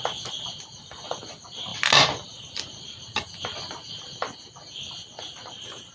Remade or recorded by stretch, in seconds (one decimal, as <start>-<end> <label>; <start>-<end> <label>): 0.0-5.9 recorded